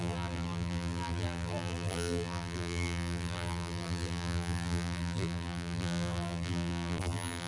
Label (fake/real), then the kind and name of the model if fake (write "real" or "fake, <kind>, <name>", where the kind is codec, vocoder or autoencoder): fake, vocoder, BigVGAN v2